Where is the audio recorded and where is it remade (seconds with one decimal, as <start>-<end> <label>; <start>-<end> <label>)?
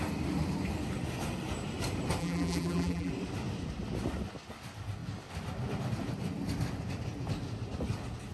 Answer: 0.0-2.2 recorded; 2.2-3.1 remade; 3.1-8.3 recorded